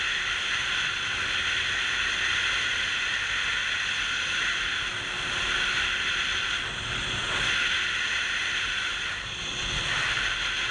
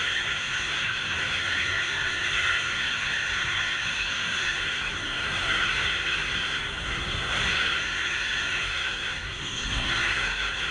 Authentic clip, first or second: first